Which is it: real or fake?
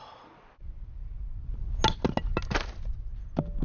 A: real